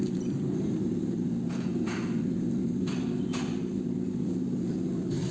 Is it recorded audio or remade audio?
recorded